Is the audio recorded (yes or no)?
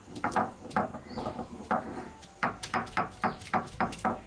no